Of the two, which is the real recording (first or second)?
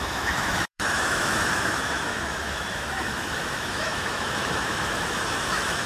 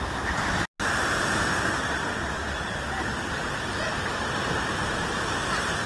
second